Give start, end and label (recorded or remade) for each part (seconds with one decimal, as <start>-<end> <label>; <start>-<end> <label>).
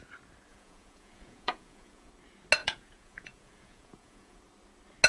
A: 0.0-0.5 recorded; 0.5-2.1 remade; 2.1-2.6 recorded; 2.6-4.4 remade; 4.4-5.1 recorded